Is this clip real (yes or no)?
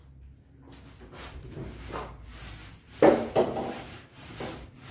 yes